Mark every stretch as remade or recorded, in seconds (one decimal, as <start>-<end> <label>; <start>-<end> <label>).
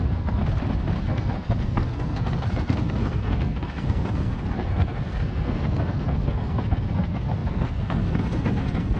0.0-0.4 remade; 0.4-1.0 recorded; 1.0-9.0 remade